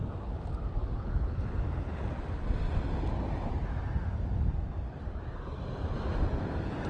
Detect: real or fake real